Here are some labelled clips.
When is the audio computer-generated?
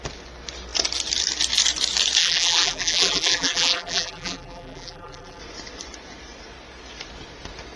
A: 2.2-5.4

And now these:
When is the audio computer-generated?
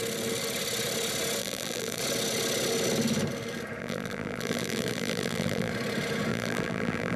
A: 1.4-2.0; 3.8-5.7; 6.3-7.2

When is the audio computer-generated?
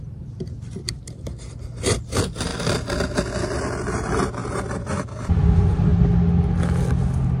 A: 0.0-2.5; 3.9-5.9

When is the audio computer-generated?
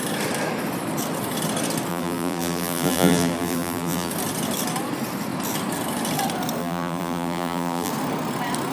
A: 1.9-4.1; 6.6-7.9